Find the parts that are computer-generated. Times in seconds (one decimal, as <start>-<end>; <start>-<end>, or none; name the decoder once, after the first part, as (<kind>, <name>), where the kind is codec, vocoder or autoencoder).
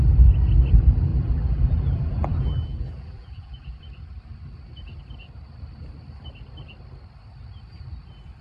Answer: 1.1-3.8 (vocoder, BigVGAN v2)